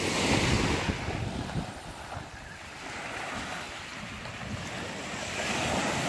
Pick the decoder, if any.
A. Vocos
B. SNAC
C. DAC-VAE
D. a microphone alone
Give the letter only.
D